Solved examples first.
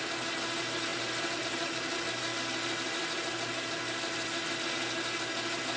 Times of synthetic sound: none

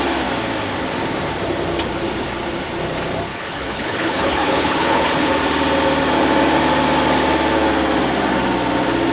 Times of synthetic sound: 3.3-5.3